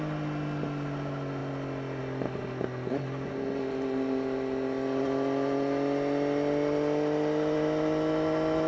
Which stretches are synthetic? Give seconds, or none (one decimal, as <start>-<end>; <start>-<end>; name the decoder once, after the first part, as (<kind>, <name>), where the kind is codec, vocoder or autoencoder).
none